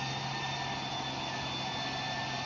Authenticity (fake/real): real